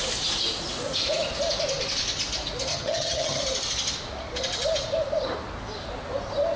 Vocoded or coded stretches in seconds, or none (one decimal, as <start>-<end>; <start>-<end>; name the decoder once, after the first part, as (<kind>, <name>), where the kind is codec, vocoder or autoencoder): 2.7-3.4 (vocoder, HiFi-GAN)

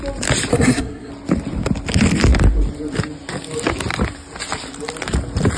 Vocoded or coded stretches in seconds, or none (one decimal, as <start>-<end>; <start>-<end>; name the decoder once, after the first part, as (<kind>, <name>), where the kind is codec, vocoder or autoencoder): 0.5-1.1 (codec, SNAC)